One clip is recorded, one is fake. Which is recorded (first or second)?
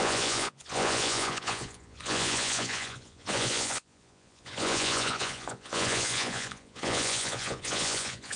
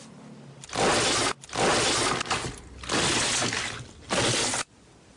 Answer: second